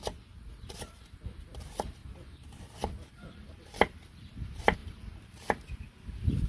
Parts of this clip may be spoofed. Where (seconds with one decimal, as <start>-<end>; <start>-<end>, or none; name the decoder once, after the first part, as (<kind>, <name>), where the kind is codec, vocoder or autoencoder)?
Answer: 0.7-2.0 (vocoder, BigVGAN v2); 3.1-6.5